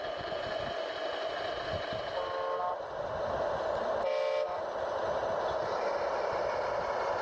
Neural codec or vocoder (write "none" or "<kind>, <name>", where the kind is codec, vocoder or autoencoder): none